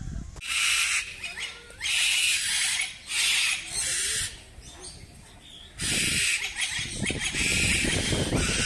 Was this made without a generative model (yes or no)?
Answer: yes